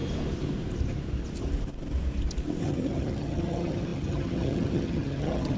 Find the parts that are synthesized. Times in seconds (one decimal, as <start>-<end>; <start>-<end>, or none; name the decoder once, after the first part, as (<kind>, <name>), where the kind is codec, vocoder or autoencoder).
2.6-5.6 (vocoder, HiFi-GAN)